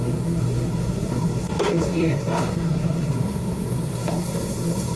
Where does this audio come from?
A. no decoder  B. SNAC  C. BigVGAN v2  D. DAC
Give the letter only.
B